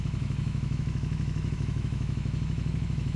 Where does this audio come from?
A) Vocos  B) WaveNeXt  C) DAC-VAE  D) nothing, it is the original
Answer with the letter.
C